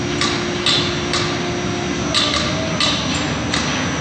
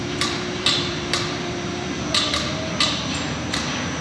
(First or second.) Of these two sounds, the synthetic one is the second